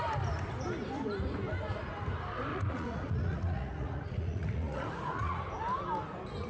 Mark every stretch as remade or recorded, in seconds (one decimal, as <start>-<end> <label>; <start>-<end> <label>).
0.0-2.5 recorded; 2.5-5.4 remade; 5.4-6.5 recorded